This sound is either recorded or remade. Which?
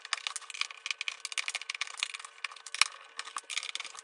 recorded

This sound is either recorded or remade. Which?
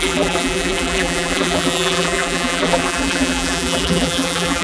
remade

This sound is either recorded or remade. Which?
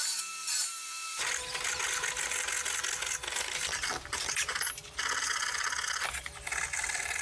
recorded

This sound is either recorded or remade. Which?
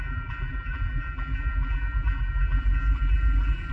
remade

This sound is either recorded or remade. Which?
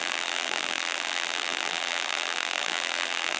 remade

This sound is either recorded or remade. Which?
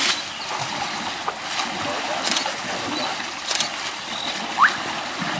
recorded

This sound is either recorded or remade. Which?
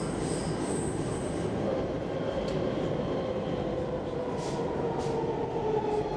recorded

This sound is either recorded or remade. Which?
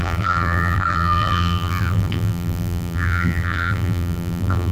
remade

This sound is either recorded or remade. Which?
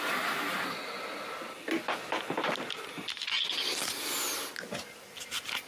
recorded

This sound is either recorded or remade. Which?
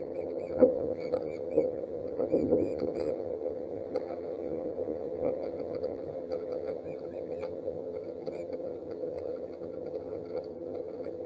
remade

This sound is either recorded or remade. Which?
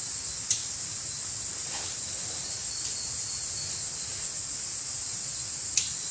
recorded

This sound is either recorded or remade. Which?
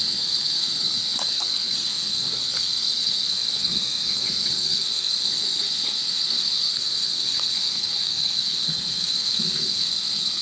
remade